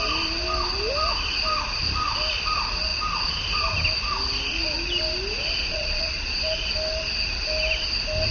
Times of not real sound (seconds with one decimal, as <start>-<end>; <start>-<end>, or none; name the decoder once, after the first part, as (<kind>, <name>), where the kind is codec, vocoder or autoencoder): 5.7-6.4 (vocoder, Vocos)